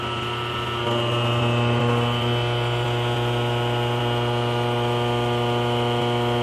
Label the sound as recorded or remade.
recorded